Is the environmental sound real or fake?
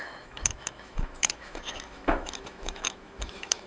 fake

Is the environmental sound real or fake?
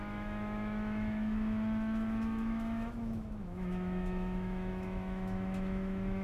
fake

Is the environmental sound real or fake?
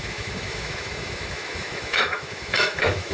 fake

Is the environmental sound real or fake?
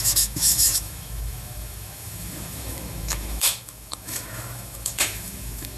fake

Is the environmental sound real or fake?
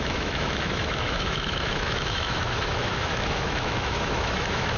fake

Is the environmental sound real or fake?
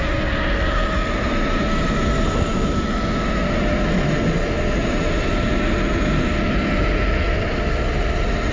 real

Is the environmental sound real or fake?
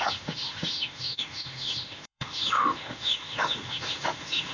fake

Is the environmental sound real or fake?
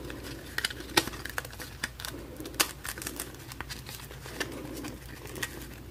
real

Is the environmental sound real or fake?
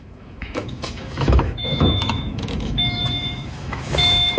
fake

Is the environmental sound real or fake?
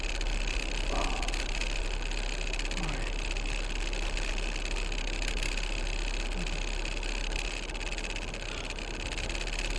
real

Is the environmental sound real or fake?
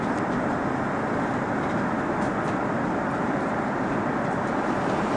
real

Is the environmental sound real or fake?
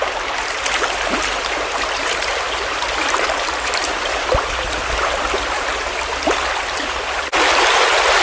real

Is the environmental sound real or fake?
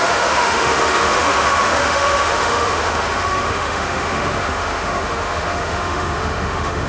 fake